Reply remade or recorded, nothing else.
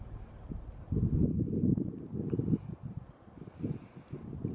recorded